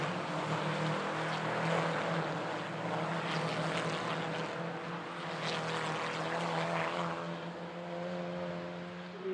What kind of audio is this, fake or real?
real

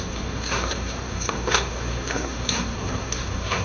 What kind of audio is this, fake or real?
fake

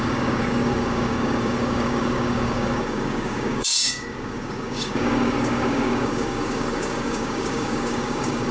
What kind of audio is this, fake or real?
fake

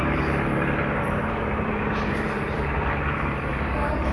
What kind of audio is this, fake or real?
fake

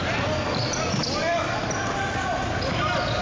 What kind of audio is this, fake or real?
real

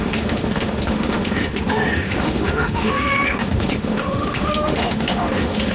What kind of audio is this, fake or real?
fake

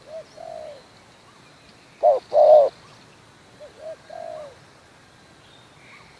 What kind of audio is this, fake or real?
real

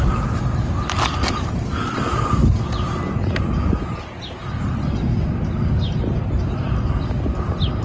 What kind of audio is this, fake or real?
real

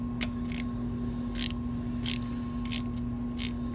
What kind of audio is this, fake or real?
real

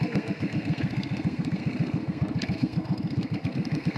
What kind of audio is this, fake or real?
fake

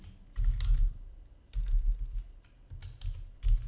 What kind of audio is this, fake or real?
real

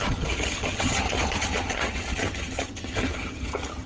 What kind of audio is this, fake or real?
fake